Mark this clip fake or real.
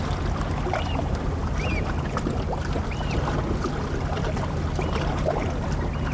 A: real